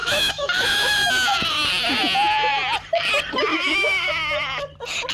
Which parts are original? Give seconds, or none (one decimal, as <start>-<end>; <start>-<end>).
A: 1.1-3.5; 4.1-5.1